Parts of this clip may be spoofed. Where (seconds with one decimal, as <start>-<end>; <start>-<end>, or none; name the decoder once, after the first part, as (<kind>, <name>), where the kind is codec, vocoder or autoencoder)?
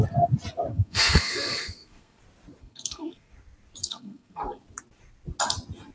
0.7-2.2 (codec, SNAC); 2.6-3.3; 3.8-4.6